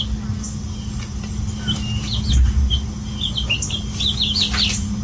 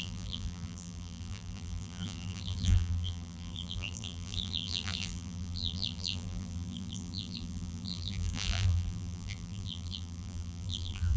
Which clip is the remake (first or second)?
second